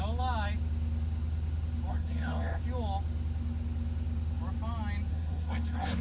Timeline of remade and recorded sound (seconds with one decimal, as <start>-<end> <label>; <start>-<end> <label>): 0.0-1.9 recorded; 1.9-2.6 remade; 2.6-5.1 recorded; 5.1-6.0 remade